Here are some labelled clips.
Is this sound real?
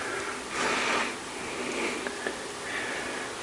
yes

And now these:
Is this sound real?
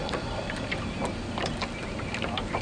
yes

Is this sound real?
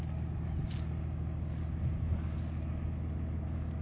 yes